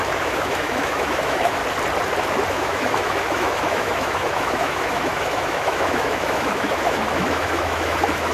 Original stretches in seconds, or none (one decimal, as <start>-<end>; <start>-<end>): 1.6-2.5